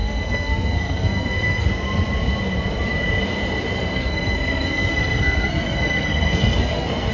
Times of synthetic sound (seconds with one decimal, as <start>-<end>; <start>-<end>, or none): 0.0-1.7; 3.7-7.1